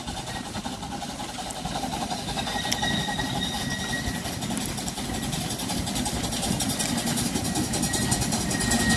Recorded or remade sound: recorded